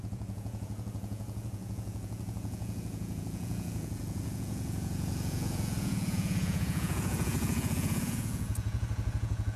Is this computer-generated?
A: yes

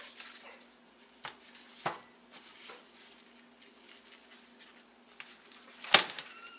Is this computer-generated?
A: no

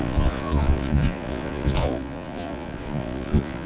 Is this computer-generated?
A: yes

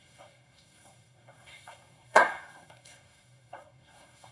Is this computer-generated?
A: yes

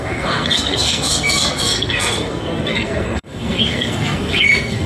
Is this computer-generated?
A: yes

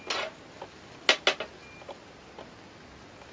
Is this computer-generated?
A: no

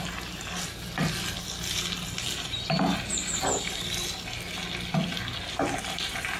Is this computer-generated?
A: no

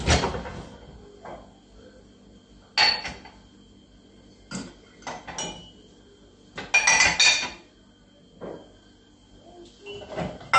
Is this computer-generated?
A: no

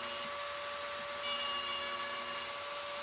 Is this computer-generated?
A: no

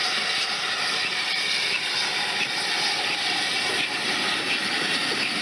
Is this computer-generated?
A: no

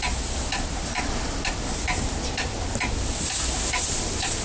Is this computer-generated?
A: no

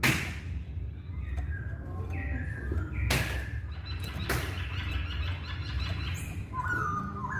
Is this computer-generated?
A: no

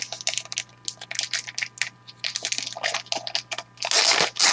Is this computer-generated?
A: no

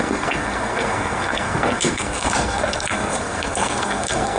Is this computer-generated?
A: yes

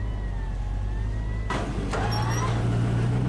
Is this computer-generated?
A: no